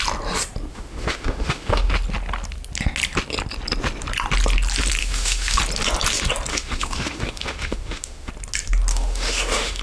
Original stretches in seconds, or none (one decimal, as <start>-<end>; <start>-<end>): 0.0-0.7; 1.9-5.0; 5.6-6.5; 8.3-8.9